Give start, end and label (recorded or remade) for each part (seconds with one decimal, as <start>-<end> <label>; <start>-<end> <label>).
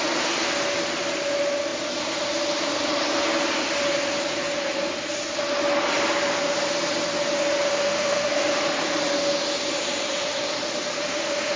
0.0-7.7 recorded; 7.7-8.3 remade; 8.3-11.0 recorded; 11.0-11.6 remade